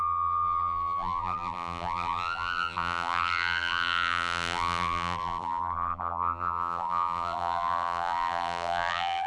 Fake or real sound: fake